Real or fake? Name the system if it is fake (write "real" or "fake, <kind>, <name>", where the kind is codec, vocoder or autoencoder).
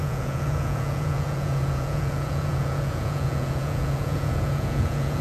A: fake, vocoder, Vocos